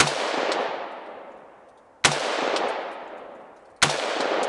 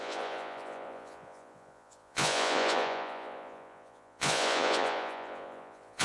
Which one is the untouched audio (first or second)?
first